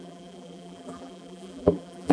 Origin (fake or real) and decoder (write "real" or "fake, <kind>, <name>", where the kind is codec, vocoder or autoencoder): fake, vocoder, BigVGAN v2